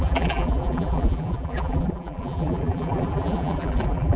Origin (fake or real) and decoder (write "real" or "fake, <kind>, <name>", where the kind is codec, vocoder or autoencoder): fake, vocoder, BigVGAN v2